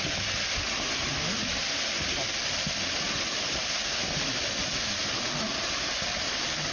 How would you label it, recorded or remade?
recorded